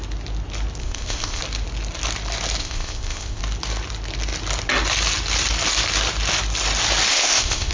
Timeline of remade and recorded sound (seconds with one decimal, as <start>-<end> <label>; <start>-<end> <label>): 0.0-0.8 recorded; 0.8-1.4 remade; 1.4-2.6 recorded; 2.6-3.4 remade; 3.4-7.1 recorded; 7.1-7.7 remade